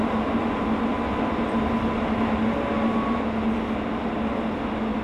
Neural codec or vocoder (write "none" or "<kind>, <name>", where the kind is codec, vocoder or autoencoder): none